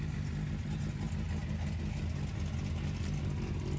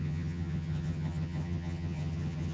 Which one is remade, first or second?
second